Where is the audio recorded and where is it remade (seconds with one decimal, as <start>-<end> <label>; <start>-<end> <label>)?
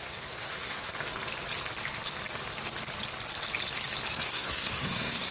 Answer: 0.0-0.9 remade; 0.9-4.1 recorded; 4.1-5.3 remade